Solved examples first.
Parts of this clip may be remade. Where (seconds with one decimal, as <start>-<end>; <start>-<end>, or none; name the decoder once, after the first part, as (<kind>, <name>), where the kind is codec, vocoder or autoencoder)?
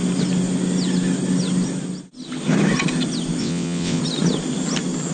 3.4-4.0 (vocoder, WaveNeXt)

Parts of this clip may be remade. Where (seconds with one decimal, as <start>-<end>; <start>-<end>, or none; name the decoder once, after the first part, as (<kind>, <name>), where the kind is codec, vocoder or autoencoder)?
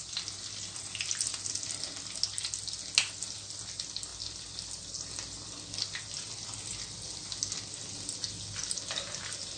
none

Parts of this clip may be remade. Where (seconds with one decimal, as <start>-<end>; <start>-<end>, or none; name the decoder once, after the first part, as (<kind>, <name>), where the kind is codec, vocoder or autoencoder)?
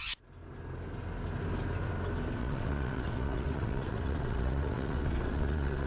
2.4-5.9 (vocoder, WaveNeXt)